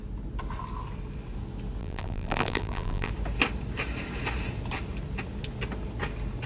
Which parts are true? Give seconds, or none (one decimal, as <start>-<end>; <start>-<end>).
0.0-1.8; 3.1-6.5